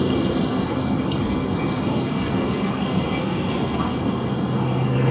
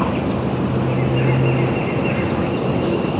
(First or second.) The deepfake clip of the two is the first